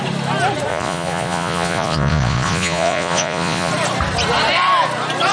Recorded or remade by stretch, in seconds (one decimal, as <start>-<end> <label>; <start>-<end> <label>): 0.0-0.7 recorded; 0.7-3.7 remade; 3.7-5.3 recorded